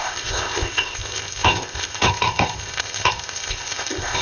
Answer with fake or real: fake